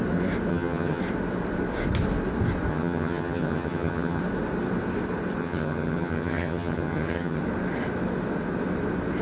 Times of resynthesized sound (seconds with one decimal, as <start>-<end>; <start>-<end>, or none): 0.5-1.0; 2.7-4.2; 5.4-7.4

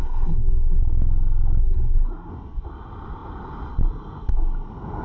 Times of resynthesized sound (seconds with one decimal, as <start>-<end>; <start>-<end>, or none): 0.0-0.8; 1.6-2.3